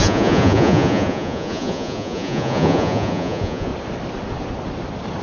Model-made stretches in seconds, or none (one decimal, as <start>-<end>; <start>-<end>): 0.0-3.7